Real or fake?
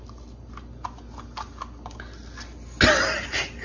real